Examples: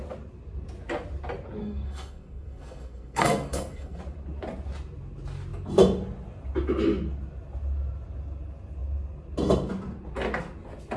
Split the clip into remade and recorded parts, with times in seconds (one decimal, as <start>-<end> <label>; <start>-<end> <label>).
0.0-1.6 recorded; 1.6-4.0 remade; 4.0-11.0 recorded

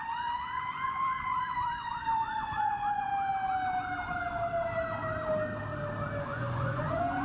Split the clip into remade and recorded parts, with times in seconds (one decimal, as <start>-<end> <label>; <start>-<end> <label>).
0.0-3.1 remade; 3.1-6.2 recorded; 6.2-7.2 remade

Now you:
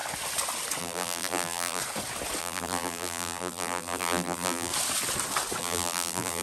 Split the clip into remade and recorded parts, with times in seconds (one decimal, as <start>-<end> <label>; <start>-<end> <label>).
0.0-0.8 recorded; 0.8-1.8 remade; 1.8-2.4 recorded; 2.4-4.7 remade; 4.7-5.6 recorded; 5.6-6.4 remade

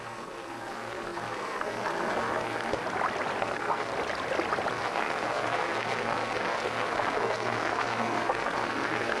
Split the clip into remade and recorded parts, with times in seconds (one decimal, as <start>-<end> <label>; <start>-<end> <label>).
0.0-2.8 remade; 2.8-3.4 recorded; 3.4-3.9 remade; 3.9-4.7 recorded; 4.7-9.2 remade

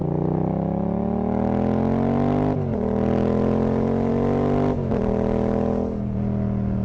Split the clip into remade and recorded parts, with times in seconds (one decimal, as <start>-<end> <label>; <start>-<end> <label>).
0.0-6.8 recorded

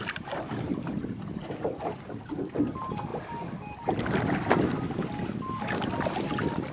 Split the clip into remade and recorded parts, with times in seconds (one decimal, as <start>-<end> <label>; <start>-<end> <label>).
0.0-6.7 recorded